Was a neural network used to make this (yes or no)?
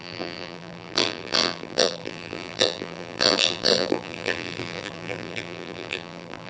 yes